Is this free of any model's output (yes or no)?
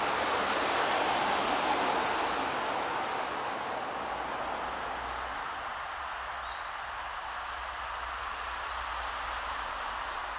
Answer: yes